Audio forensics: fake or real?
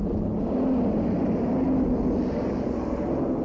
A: real